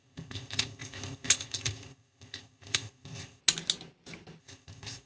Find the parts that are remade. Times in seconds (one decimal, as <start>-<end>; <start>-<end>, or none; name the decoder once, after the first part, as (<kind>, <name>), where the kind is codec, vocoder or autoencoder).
0.0-3.4 (codec, ZipCodec); 4.4-5.1